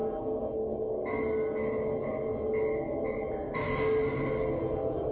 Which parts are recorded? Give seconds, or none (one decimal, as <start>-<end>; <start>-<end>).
0.0-5.1